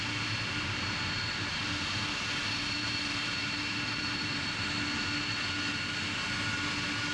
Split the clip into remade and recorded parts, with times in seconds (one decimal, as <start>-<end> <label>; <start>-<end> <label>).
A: 0.0-2.4 recorded; 2.4-4.6 remade; 4.6-7.1 recorded